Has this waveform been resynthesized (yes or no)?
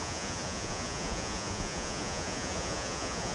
yes